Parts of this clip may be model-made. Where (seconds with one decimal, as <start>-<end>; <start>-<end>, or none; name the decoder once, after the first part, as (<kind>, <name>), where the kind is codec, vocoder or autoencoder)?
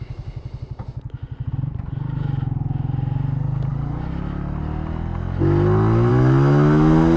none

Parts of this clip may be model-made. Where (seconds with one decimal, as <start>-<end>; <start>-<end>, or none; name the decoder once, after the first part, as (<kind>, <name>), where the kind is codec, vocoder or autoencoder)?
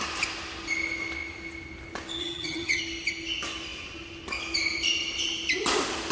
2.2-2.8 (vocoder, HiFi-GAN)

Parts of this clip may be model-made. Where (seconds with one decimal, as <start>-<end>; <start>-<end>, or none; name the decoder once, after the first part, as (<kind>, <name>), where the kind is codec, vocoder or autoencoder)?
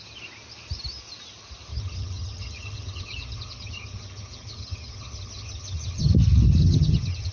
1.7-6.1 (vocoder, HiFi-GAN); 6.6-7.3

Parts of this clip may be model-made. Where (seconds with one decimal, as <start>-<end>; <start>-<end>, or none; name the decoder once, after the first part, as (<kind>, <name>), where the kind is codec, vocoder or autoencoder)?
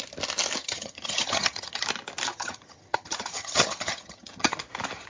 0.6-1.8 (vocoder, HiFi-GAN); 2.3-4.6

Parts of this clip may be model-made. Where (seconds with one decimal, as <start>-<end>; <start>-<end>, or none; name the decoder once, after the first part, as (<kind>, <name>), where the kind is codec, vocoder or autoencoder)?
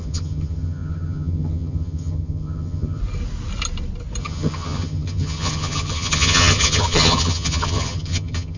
0.0-3.0 (vocoder, HiFi-GAN); 4.2-8.6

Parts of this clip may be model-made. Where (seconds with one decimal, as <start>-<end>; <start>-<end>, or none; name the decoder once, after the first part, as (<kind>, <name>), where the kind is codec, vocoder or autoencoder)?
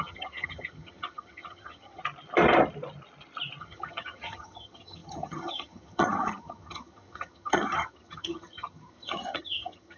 0.0-2.0 (vocoder, HiFi-GAN); 3.6-10.0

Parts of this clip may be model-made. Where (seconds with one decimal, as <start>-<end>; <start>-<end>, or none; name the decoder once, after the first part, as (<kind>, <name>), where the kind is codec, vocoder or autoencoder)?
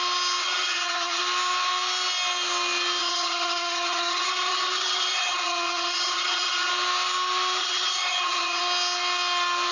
0.4-1.2 (vocoder, HiFi-GAN); 3.0-6.7; 7.6-8.6